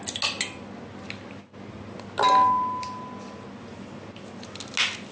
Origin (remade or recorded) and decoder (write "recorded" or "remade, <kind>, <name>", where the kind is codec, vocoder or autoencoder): recorded